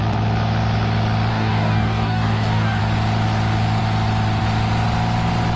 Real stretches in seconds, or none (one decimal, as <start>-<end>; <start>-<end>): 0.0-1.3; 2.8-5.6